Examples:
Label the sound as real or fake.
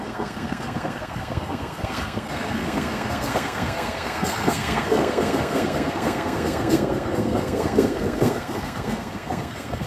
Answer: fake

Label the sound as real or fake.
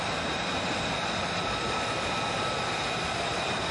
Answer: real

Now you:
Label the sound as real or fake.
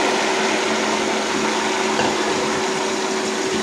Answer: real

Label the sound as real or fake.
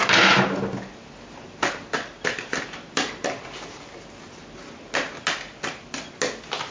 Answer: real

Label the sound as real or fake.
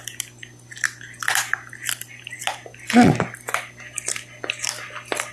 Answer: real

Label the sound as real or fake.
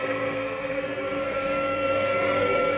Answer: fake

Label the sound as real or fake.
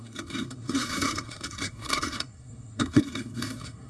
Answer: fake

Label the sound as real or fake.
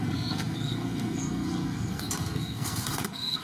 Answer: fake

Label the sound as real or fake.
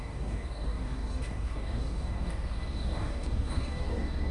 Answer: fake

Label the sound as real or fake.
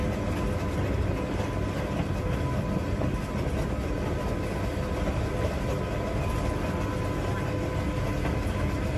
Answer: real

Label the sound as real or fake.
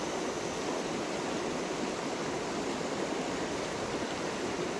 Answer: real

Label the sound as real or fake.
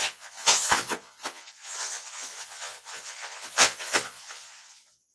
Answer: fake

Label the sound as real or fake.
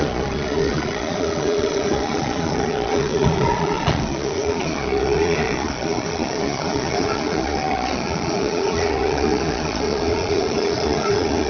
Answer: fake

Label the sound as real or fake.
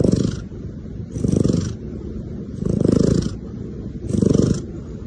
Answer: fake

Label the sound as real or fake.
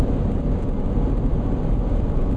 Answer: real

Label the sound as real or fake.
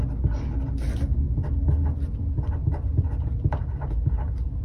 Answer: real